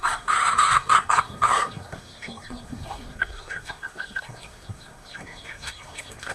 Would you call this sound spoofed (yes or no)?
yes